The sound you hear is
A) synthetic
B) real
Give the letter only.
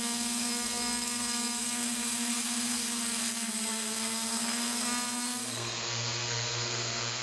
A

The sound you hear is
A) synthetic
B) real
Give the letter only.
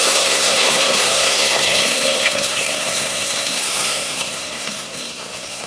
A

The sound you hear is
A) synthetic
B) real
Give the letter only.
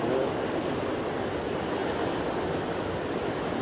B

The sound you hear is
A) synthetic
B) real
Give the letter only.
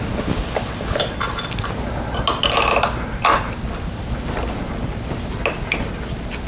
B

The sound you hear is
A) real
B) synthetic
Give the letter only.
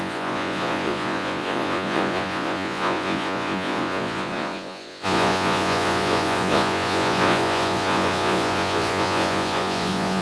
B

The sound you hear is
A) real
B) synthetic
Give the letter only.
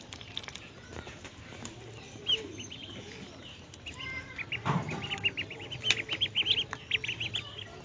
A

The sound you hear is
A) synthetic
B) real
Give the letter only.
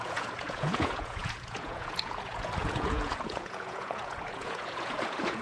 A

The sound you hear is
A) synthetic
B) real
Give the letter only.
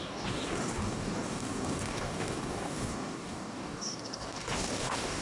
A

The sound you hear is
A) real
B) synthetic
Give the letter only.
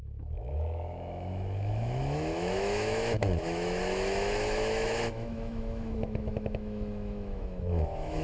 B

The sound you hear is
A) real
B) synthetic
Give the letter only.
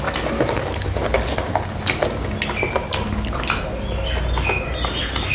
A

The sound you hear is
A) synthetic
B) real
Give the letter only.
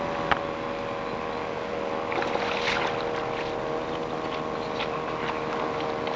B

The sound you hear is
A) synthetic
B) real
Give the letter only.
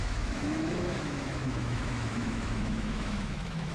A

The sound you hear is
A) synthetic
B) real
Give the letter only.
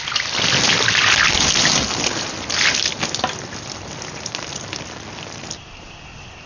B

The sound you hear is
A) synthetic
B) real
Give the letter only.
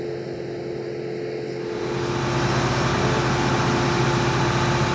B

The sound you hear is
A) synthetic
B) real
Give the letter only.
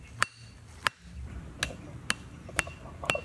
B